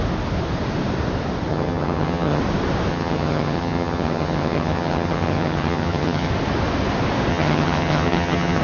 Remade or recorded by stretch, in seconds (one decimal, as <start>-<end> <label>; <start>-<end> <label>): 0.0-1.5 recorded; 1.5-2.4 remade; 2.4-2.9 recorded; 2.9-6.3 remade; 6.3-7.3 recorded; 7.3-8.6 remade